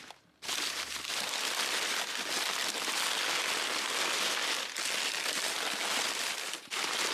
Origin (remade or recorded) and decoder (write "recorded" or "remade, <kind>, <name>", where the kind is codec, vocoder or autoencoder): recorded